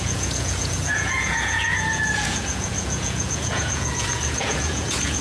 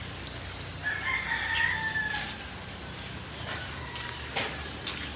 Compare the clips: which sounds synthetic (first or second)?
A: first